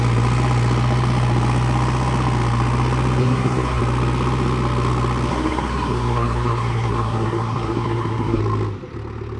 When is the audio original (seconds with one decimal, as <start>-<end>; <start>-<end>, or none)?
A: 0.0-3.2; 3.8-5.3; 8.4-9.4